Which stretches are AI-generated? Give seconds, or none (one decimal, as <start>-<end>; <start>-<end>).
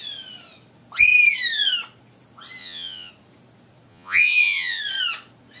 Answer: 2.6-3.1; 3.9-4.8